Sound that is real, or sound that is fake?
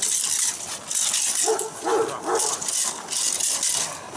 real